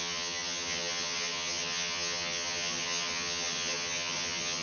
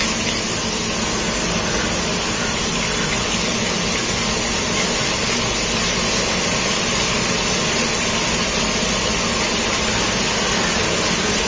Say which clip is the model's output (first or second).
first